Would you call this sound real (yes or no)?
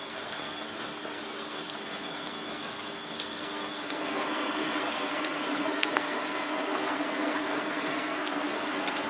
no